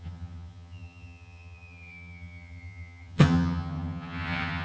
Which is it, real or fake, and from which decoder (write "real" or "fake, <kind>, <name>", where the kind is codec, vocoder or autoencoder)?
fake, vocoder, HiFi-GAN